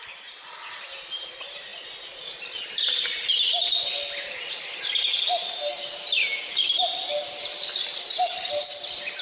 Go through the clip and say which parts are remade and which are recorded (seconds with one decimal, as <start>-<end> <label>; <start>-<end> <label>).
0.0-9.2 recorded